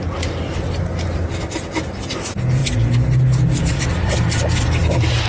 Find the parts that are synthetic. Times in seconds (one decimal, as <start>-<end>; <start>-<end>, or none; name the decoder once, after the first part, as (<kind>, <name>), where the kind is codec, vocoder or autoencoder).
none